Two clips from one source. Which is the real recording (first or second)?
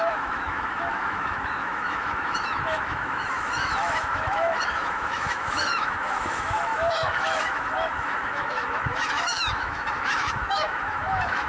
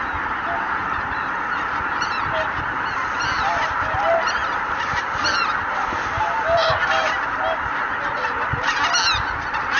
second